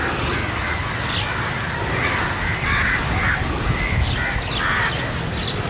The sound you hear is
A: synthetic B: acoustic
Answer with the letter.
B